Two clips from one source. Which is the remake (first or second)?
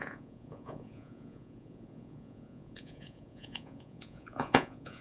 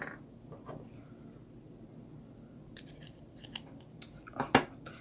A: first